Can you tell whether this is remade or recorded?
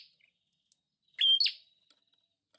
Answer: recorded